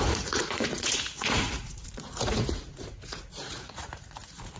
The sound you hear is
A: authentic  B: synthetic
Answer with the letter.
B